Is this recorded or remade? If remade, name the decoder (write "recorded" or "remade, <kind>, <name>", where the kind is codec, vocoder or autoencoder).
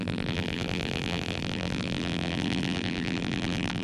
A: remade, vocoder, BigVGAN v2